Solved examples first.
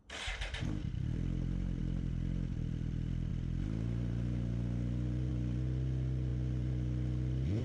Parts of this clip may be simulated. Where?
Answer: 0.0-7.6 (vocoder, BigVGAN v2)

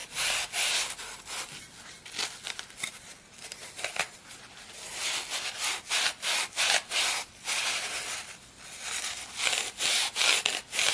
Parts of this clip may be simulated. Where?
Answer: none